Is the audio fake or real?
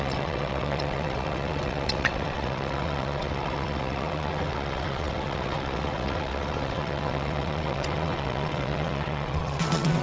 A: fake